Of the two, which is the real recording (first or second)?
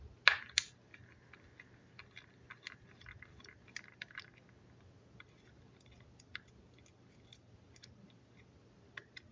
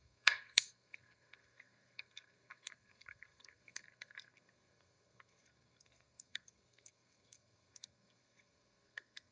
first